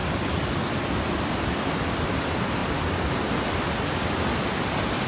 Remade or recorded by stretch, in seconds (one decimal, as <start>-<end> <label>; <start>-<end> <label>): 0.0-5.1 recorded